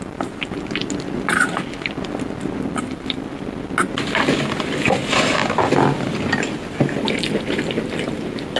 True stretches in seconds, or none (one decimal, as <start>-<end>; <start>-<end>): 0.0-8.6